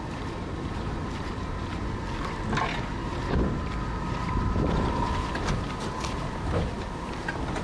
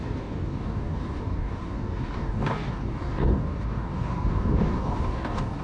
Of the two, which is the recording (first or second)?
first